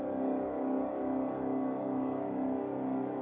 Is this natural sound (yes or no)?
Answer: no